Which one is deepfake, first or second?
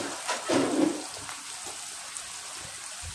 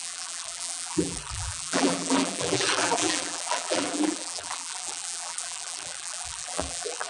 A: second